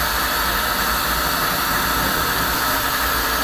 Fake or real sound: real